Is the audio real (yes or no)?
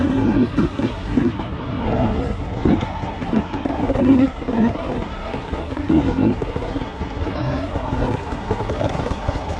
no